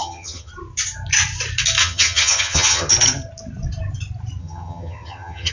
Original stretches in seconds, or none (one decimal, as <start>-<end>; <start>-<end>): 0.5-1.8; 2.9-4.4